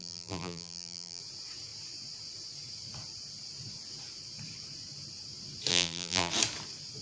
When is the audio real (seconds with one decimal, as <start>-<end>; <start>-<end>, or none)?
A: 1.2-5.7; 6.3-7.0